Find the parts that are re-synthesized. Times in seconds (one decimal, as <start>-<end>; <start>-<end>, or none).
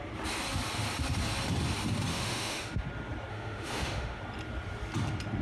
2.1-2.7; 3.3-4.2